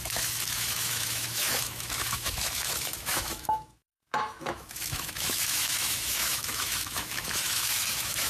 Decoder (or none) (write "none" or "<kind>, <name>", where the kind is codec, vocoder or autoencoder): autoencoder, DAC-VAE